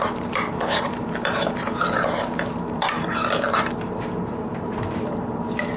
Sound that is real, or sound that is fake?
fake